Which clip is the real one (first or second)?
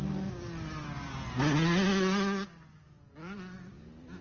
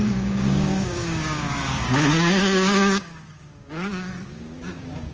first